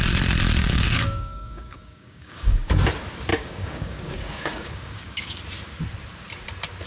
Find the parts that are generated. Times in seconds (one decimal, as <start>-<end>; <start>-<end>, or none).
0.6-2.7; 3.3-5.4